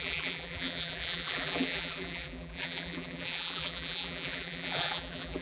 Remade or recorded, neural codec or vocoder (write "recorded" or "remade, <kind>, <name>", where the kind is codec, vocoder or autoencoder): remade, vocoder, BigVGAN v2